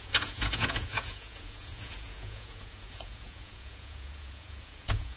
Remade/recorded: remade